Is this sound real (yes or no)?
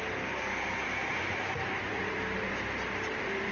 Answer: no